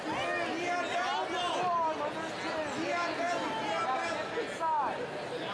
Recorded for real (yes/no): yes